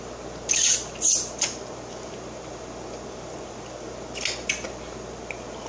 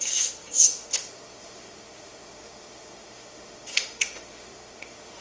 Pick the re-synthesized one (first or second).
second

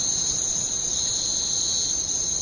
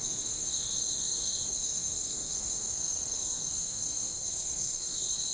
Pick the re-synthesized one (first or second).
second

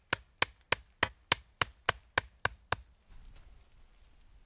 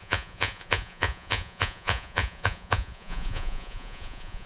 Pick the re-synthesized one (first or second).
second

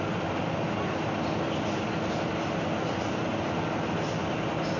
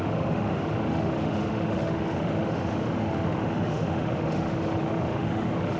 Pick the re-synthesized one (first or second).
second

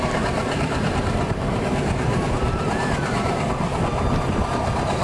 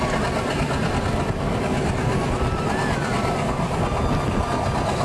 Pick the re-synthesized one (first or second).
first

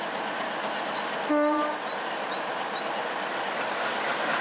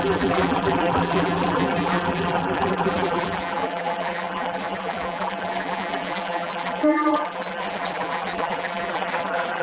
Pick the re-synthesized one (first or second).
second